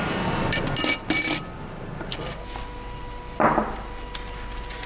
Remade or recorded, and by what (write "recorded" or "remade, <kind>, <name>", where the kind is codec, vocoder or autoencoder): recorded